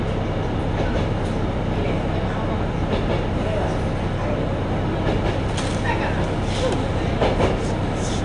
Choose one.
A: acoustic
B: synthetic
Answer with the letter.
A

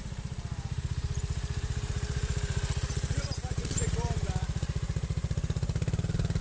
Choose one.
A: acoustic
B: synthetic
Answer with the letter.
B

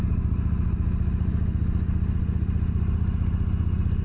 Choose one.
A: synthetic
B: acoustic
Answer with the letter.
B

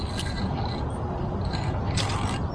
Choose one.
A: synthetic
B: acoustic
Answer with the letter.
B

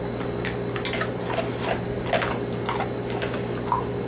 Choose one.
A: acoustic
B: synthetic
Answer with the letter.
A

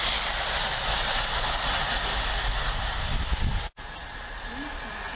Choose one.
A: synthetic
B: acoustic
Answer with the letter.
B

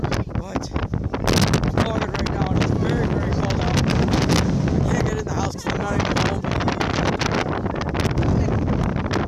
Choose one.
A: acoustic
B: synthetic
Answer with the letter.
A